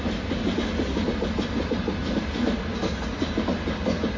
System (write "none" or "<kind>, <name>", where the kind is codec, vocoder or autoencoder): none